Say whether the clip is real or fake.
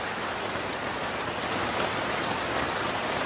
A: fake